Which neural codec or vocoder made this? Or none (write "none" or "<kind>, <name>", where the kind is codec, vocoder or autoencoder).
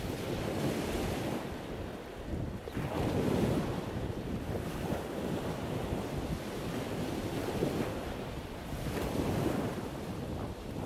none